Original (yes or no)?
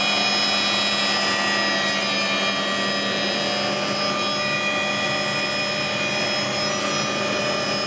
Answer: yes